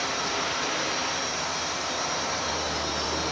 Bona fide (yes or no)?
no